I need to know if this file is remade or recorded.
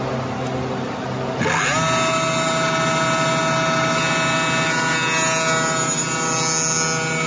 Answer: recorded